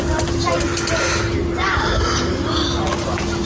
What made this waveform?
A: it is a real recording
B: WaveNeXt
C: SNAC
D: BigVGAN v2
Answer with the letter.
A